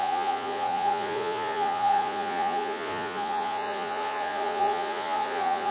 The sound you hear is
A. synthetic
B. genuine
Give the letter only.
A